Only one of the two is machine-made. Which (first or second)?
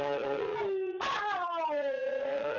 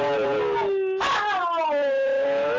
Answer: first